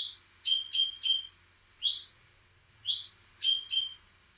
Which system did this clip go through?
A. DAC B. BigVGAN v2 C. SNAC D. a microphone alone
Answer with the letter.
D